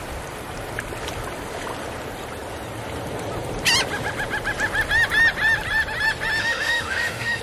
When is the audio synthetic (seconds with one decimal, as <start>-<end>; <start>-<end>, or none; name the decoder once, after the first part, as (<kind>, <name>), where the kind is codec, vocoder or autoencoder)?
6.4-7.4 (autoencoder, DAC-VAE)